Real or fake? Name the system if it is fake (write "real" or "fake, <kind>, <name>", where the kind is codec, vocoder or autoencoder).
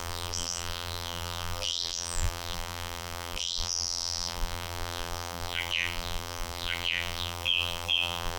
fake, vocoder, BigVGAN v2